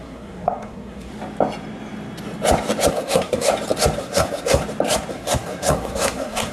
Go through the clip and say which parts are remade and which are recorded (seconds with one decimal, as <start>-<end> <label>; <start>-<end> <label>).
0.0-1.1 remade; 1.1-2.9 recorded; 2.9-3.5 remade; 3.5-4.0 recorded; 4.0-4.6 remade; 4.6-5.1 recorded; 5.1-6.5 remade